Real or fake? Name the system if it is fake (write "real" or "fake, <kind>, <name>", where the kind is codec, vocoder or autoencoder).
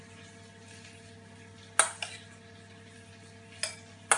real